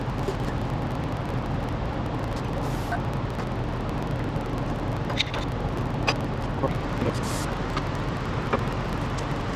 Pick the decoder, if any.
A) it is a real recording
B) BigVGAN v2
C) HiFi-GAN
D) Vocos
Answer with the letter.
A